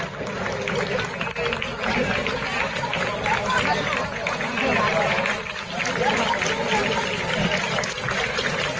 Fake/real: real